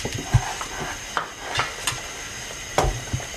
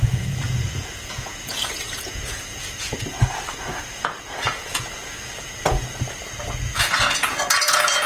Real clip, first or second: first